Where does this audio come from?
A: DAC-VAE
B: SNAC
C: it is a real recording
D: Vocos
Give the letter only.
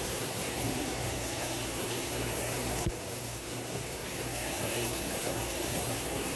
B